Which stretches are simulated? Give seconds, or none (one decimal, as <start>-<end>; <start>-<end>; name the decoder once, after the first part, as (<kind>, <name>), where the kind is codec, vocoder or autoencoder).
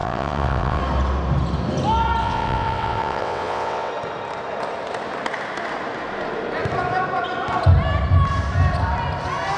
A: 0.0-0.8 (vocoder, WaveNeXt); 2.2-3.9